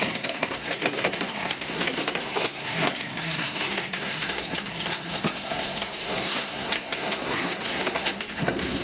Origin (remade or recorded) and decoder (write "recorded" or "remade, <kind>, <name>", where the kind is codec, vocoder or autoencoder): remade, codec, SNAC